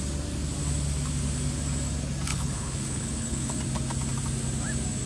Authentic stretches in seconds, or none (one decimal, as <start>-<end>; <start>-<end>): 0.0-2.3; 3.6-5.1